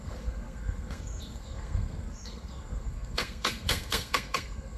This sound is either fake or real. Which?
fake